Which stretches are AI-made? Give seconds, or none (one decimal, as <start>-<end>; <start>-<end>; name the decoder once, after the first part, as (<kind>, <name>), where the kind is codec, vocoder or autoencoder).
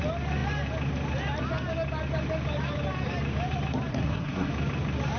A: 3.9-4.5 (codec, SNAC)